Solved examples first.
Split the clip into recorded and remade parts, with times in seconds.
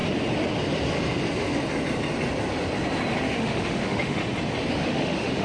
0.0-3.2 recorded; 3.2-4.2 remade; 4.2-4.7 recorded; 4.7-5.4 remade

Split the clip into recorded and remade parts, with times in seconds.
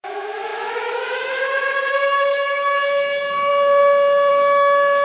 0.0-3.5 remade; 3.5-4.3 recorded; 4.3-5.0 remade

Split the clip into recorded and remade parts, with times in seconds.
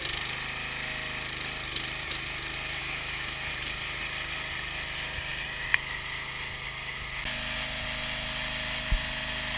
0.0-2.8 recorded; 2.8-3.5 remade; 3.5-9.6 recorded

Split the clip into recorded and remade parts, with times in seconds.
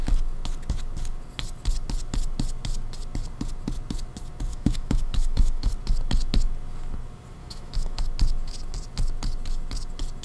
0.0-4.5 recorded; 4.5-5.7 remade; 5.7-7.4 recorded; 7.4-8.0 remade; 8.0-10.2 recorded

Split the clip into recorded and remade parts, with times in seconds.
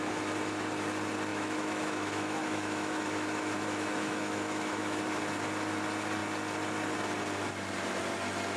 0.0-1.3 recorded; 1.3-5.0 remade; 5.0-8.6 recorded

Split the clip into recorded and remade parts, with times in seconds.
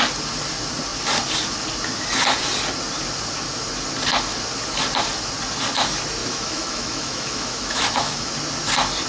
0.0-6.2 recorded; 6.2-8.3 remade; 8.3-9.1 recorded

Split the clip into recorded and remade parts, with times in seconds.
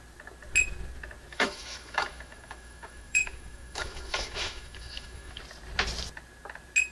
0.0-1.3 recorded; 1.3-5.4 remade; 5.4-6.9 recorded